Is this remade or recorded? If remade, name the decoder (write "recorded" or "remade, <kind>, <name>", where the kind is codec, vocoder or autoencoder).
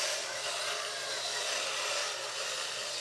recorded